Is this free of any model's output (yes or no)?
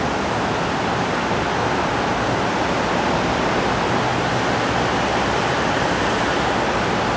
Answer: yes